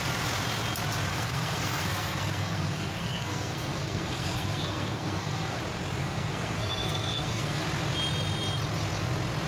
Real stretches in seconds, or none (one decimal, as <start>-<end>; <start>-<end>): 0.0-1.1; 5.6-6.0; 7.6-9.5